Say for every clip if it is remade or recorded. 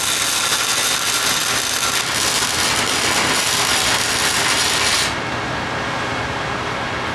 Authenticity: recorded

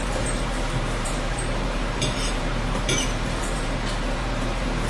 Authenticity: remade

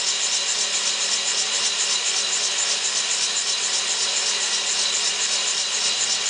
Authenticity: recorded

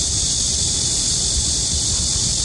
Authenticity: recorded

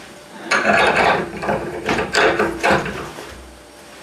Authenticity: remade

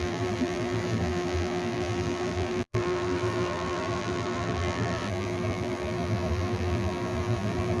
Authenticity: remade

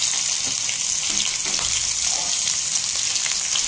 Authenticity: recorded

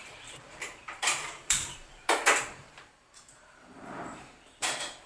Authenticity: remade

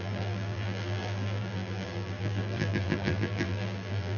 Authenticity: remade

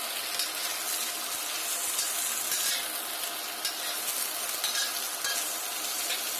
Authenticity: recorded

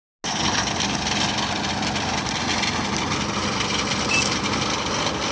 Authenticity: recorded